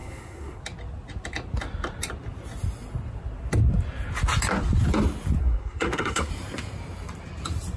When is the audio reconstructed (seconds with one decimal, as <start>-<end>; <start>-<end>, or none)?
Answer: 0.0-0.6; 5.4-6.3